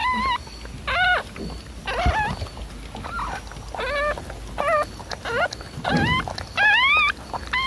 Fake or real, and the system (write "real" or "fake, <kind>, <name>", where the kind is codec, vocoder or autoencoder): real